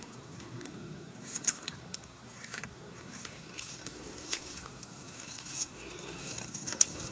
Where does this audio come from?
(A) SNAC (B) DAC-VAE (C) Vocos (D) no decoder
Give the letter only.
A